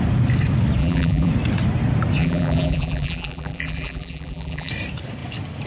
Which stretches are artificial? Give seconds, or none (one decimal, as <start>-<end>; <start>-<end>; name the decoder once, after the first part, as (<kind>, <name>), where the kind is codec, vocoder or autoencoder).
0.8-1.3 (vocoder, BigVGAN v2); 2.2-4.7